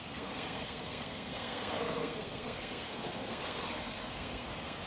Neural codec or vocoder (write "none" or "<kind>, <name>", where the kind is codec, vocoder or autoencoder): codec, SNAC